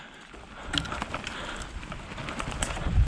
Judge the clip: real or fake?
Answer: real